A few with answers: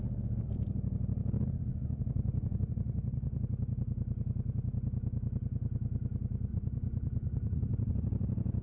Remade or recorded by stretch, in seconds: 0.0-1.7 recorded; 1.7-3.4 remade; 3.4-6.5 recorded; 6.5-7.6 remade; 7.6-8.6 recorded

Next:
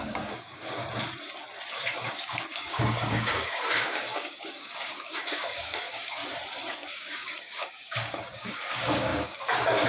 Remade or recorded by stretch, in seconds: 0.0-0.8 remade; 0.8-1.7 recorded; 1.7-6.2 remade; 6.2-6.7 recorded; 6.7-9.9 remade

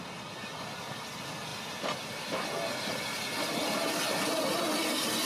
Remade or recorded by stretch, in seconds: 0.0-5.3 recorded

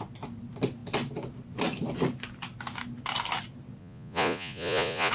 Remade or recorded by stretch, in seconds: 0.0-3.8 recorded; 3.8-5.1 remade

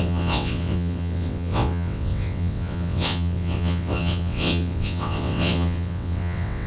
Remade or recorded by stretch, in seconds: 0.0-6.7 remade

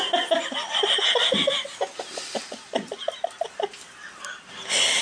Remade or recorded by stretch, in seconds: 0.0-5.0 recorded

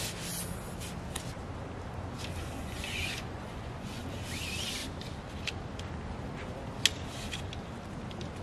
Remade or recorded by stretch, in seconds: 0.0-2.6 recorded; 2.6-4.0 remade; 4.0-8.4 recorded